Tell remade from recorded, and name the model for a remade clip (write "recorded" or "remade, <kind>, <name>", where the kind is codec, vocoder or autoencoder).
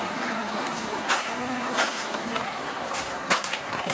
remade, codec, SNAC